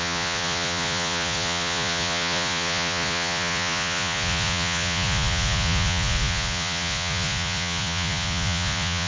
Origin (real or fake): fake